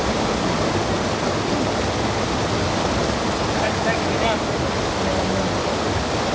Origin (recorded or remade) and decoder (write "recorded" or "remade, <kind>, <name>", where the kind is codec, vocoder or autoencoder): recorded